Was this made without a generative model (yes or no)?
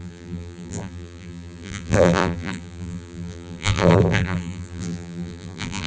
no